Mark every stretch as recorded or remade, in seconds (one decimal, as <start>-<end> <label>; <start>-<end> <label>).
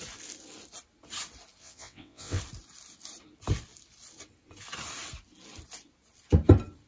0.0-1.6 recorded; 1.6-2.4 remade; 2.4-6.9 recorded